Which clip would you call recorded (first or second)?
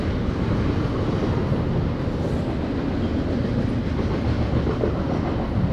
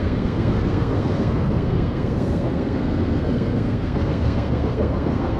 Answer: first